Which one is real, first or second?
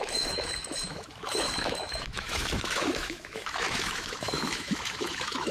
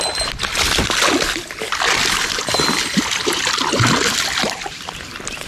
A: second